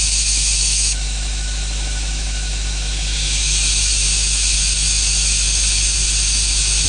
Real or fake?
fake